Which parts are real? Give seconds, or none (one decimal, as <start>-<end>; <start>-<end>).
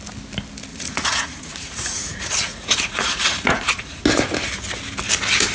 0.0-0.7; 4.0-5.5